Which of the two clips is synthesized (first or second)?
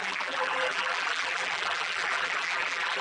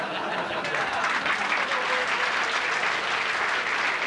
first